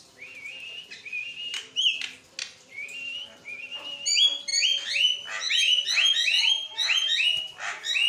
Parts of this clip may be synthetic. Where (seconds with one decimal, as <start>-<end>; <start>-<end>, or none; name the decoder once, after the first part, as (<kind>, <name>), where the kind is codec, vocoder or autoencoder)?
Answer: none